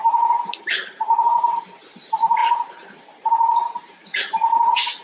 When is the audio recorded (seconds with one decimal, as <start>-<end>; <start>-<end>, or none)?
0.0-5.0

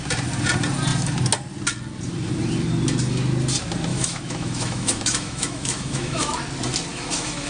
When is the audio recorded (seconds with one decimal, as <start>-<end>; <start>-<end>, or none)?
0.0-3.9; 6.4-6.9

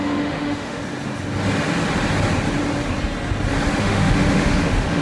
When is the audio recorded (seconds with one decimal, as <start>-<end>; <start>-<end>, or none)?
0.8-3.8

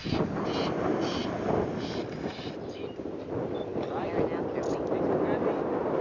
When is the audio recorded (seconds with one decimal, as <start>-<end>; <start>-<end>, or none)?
0.0-6.0

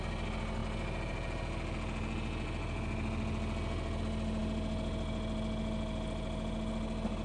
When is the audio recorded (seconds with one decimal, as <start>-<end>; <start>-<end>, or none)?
0.0-7.2

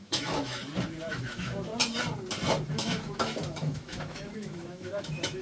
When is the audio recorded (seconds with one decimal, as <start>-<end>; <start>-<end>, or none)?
0.6-1.1; 1.7-2.7

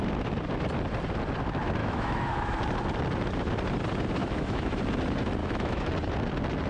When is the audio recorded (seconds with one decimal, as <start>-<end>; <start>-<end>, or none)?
0.0-1.8; 2.5-4.2; 4.8-5.4; 5.9-6.7